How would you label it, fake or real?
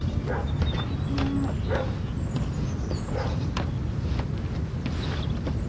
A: real